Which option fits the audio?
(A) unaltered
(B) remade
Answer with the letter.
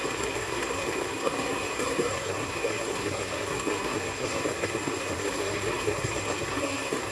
B